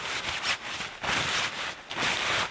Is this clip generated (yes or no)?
no